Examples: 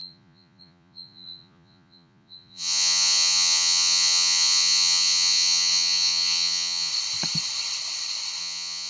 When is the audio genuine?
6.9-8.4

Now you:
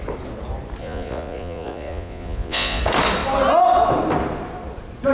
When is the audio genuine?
0.0-0.8; 2.8-5.1

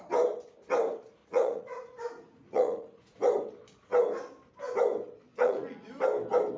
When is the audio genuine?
0.0-1.2; 3.2-5.3; 5.9-6.6

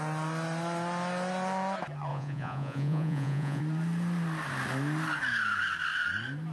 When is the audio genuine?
0.0-2.1; 3.6-6.5

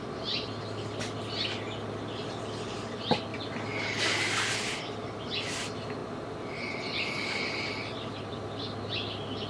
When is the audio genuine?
0.0-9.5

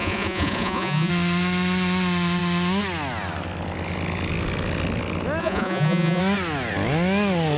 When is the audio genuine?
1.1-5.4; 6.2-7.6